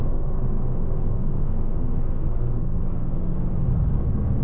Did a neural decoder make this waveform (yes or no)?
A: yes